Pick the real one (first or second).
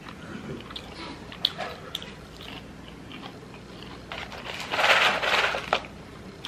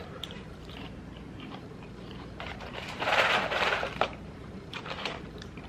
first